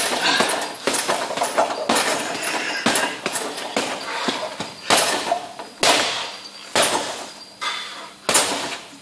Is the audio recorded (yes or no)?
yes